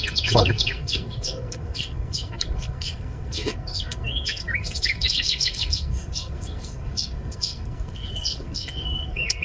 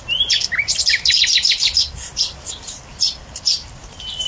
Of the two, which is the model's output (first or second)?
first